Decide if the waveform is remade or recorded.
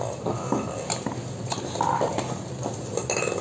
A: recorded